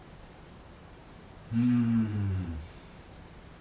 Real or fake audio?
fake